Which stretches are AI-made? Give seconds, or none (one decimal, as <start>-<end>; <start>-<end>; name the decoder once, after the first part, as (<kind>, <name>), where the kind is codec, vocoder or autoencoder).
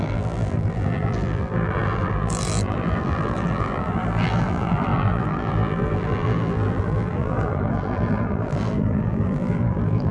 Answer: 0.0-10.1 (vocoder, BigVGAN v2)